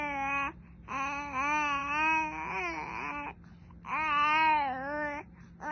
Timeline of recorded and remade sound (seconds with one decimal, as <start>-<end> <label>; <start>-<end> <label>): 0.0-5.7 recorded